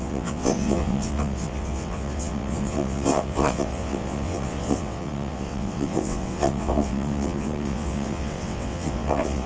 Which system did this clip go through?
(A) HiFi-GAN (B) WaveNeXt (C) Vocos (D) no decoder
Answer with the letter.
B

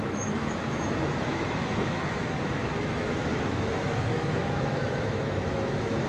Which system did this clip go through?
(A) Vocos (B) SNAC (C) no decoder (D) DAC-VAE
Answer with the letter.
D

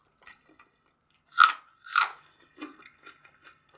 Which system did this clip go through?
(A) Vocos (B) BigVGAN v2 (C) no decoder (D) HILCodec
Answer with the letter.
C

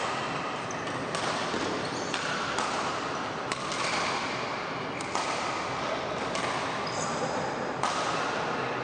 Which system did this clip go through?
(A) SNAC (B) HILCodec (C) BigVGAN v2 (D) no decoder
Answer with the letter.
D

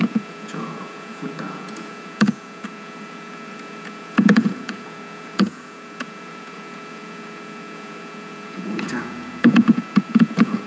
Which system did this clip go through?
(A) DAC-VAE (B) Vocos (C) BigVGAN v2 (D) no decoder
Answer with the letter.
B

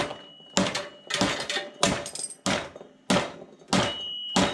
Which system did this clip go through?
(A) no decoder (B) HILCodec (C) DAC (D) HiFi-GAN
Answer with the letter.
A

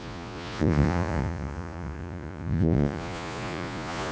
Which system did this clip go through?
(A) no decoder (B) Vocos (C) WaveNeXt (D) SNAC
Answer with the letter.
B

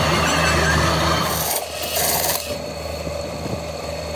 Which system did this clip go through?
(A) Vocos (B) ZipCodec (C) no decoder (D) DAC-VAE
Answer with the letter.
C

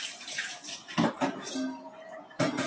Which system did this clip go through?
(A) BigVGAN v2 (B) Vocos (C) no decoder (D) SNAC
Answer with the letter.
A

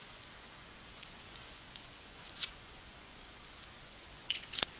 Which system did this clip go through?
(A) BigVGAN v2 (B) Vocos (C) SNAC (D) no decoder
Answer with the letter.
B